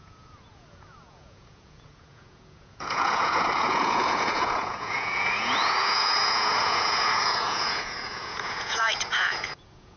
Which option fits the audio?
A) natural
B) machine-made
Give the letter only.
B